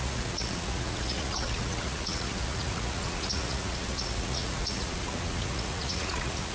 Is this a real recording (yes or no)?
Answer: no